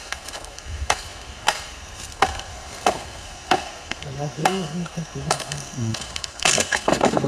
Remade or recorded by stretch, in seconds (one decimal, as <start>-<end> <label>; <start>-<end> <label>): 0.0-7.3 remade